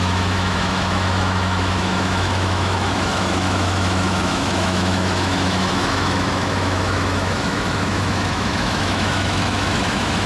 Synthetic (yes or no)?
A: yes